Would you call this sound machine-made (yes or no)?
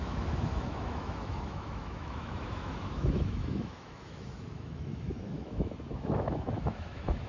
yes